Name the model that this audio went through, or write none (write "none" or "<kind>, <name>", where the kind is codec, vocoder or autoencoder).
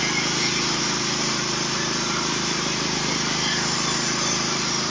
vocoder, BigVGAN v2